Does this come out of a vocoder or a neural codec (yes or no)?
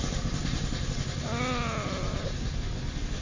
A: no